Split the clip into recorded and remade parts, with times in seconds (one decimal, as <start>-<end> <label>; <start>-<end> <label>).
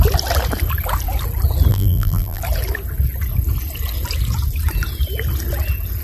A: 0.0-1.7 recorded; 1.7-2.4 remade; 2.4-6.0 recorded